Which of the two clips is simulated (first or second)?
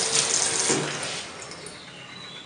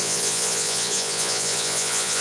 second